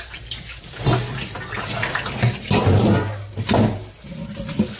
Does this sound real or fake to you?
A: real